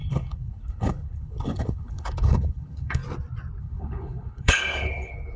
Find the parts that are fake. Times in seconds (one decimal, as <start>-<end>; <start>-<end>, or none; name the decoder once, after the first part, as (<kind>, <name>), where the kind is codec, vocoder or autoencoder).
0.0-3.0 (codec, HILCodec); 3.6-5.4